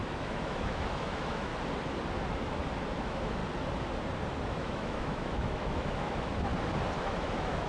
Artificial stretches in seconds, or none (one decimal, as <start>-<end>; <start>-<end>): 0.0-1.5; 3.0-3.4; 4.5-6.5; 7.0-7.7